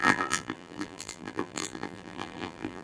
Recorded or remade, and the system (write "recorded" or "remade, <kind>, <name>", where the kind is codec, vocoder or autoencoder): remade, vocoder, BigVGAN v2